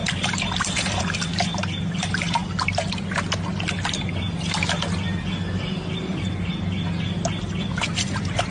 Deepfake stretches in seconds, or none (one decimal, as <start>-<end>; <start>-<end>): 0.0-1.3; 1.8-2.4; 7.5-8.5